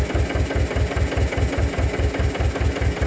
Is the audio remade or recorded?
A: recorded